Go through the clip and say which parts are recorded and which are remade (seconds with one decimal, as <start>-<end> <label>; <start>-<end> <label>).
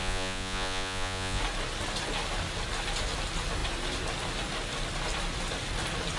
0.0-1.4 remade; 1.4-6.2 recorded